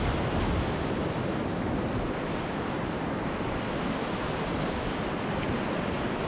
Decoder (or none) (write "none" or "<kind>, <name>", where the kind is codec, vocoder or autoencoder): none